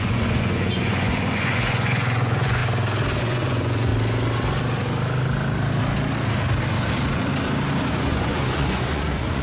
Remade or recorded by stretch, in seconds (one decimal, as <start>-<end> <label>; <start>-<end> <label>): 0.0-2.6 remade; 2.6-3.2 recorded; 3.2-3.9 remade; 3.9-7.9 recorded; 7.9-9.4 remade